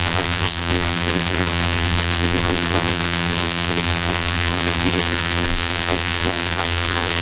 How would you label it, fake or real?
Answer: fake